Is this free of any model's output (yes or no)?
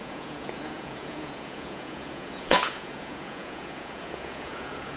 no